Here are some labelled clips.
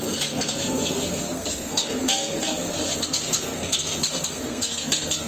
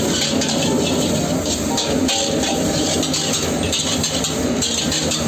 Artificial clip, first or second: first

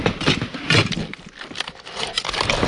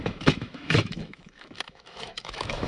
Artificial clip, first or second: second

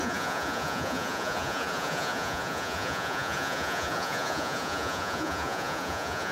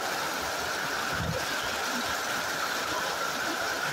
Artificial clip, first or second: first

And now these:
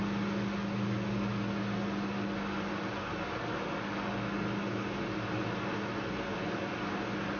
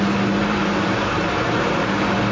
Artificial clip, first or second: second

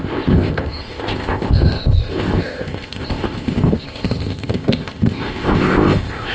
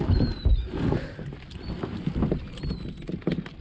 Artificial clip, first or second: first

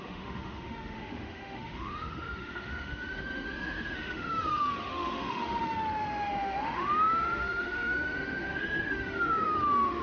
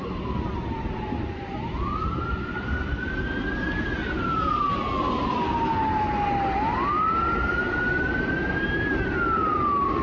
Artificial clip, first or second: first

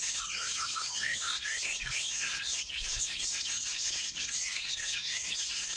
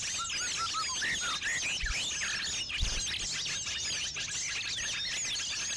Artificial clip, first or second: first